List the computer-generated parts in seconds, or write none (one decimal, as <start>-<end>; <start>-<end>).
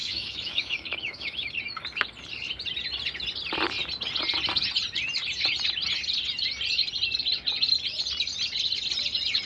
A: 0.0-1.5